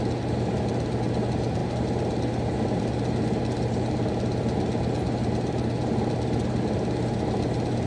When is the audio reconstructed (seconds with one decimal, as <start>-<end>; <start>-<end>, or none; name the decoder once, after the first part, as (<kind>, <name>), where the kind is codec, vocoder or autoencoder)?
none